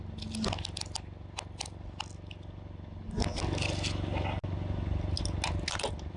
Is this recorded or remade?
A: recorded